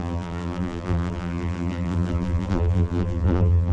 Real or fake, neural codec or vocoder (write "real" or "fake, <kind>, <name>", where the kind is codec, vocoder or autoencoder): fake, vocoder, BigVGAN v2